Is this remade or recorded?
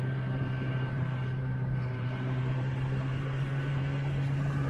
remade